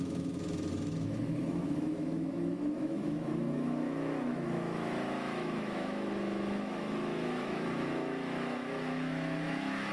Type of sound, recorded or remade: remade